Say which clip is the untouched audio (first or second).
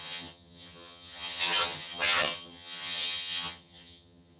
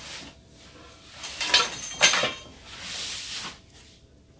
second